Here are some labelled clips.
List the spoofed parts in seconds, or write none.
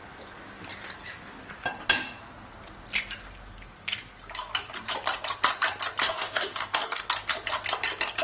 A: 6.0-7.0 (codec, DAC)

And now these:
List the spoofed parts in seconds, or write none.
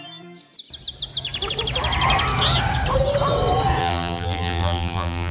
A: 3.8-5.3 (vocoder, BigVGAN v2)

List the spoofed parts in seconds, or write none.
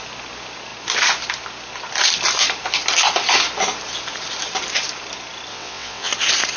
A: 5.5-6.1 (vocoder, WaveNeXt)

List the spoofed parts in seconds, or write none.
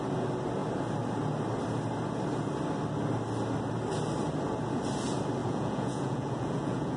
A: 5.4-7.0 (vocoder, Vocos)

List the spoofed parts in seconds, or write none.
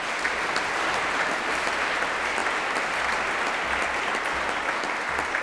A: none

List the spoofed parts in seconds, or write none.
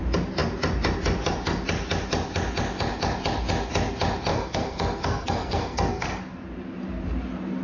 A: 4.3-6.2 (codec, SNAC)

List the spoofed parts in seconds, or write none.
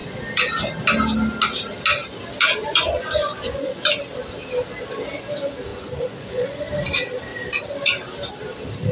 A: 2.6-3.9 (vocoder, Vocos); 5.7-6.7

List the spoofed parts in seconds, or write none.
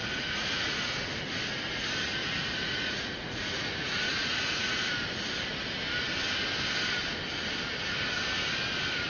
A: 0.0-1.1 (vocoder, Vocos); 2.2-4.8